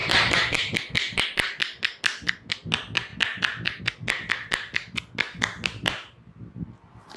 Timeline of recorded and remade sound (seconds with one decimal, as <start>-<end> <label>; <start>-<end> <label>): 0.0-1.2 remade; 1.2-7.2 recorded